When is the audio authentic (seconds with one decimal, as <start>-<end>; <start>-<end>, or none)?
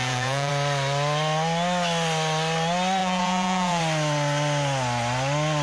0.5-3.0; 3.8-5.6